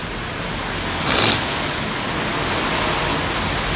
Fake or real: real